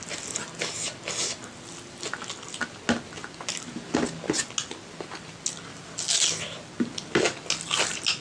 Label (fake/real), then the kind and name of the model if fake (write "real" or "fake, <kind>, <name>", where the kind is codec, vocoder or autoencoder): real